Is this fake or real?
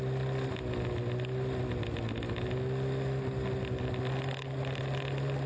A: real